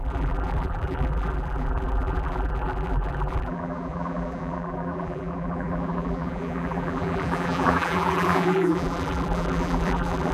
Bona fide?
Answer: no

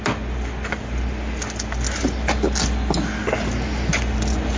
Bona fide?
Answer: yes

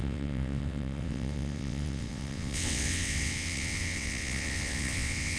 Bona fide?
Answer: no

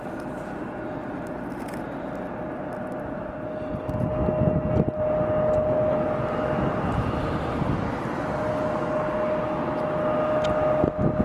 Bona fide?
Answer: yes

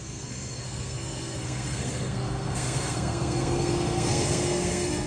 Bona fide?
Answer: no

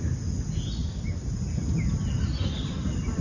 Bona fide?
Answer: yes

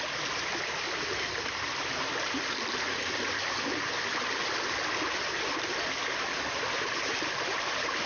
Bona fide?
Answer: yes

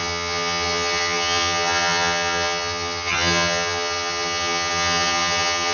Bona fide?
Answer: no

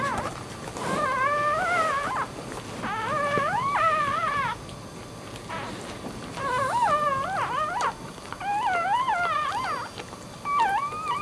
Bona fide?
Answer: yes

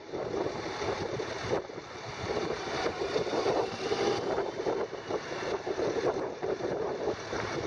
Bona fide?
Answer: no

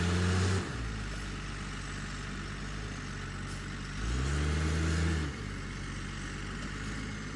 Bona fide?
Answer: yes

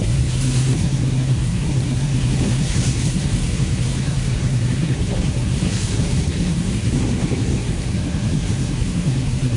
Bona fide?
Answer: no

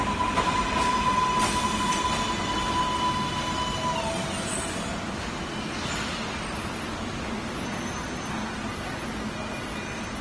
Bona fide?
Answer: yes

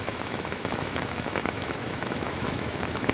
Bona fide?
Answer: no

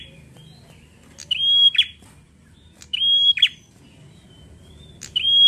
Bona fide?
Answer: no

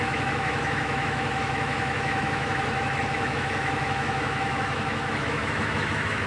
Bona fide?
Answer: no